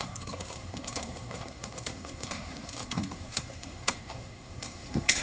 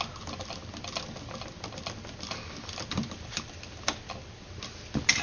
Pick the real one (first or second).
second